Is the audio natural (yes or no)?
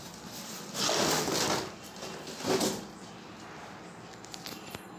yes